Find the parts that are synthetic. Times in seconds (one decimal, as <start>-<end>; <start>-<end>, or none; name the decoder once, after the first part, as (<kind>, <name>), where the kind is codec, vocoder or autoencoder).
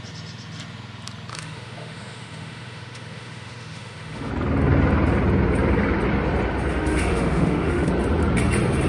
1.3-4.3 (autoencoder, DAC-VAE); 6.7-7.9